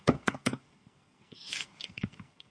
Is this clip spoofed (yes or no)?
yes